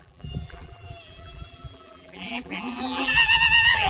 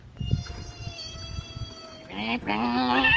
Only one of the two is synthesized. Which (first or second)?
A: first